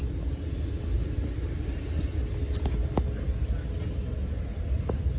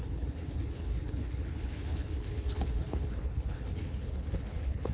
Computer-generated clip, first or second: second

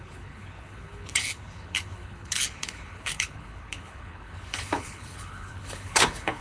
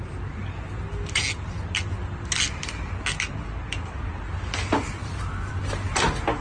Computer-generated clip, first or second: first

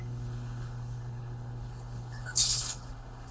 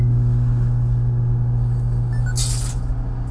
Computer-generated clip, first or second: first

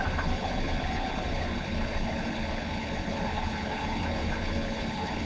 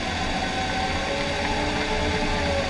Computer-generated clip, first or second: first